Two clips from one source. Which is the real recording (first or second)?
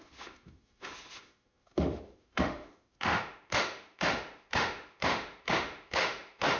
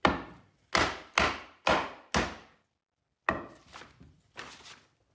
second